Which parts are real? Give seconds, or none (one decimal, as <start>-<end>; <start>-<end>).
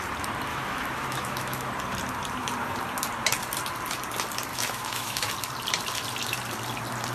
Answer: 0.0-0.5; 1.7-4.5; 5.3-7.1